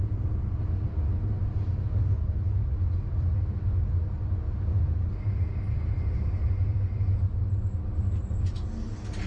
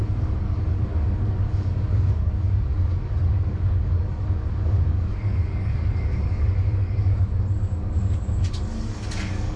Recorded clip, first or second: first